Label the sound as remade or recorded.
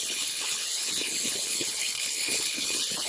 remade